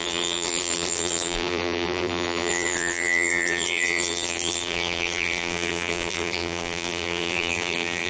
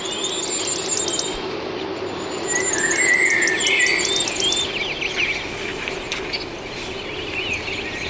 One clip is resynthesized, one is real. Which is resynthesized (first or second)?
first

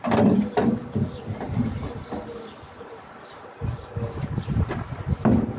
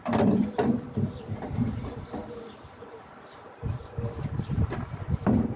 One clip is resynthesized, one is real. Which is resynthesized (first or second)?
second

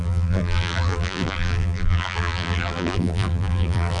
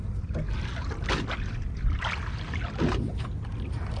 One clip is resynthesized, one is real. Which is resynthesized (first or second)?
first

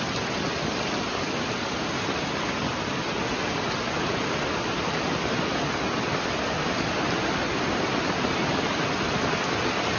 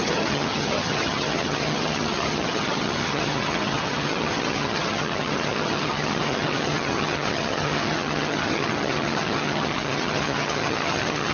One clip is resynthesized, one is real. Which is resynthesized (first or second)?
second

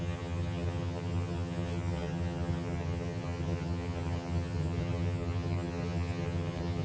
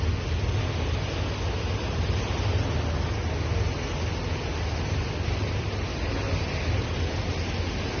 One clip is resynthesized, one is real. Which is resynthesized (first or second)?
first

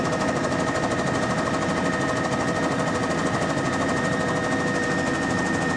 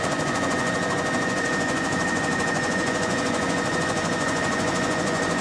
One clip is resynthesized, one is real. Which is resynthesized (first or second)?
second